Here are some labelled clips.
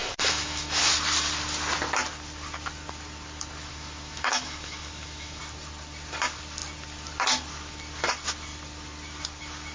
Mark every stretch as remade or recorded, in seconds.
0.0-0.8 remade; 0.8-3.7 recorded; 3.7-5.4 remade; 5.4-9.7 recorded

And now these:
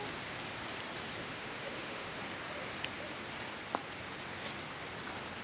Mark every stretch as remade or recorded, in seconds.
0.0-1.2 recorded; 1.2-2.2 remade; 2.2-5.4 recorded

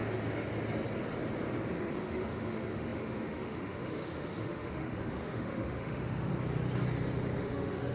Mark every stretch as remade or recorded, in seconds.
0.0-1.8 recorded; 1.8-6.3 remade; 6.3-7.4 recorded; 7.4-7.9 remade